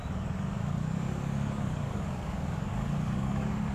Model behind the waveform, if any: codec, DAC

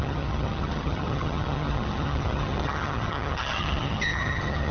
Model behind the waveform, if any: vocoder, HiFi-GAN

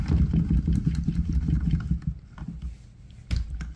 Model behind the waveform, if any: none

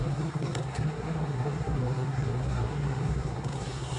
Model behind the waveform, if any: codec, SNAC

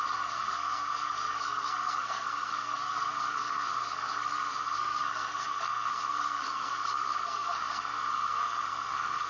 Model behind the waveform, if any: codec, SNAC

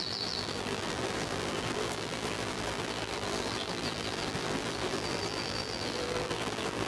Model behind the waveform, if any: vocoder, BigVGAN v2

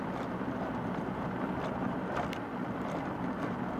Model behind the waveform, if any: none